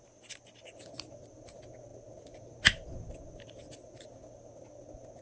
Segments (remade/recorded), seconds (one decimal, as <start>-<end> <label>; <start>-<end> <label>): 0.0-5.2 recorded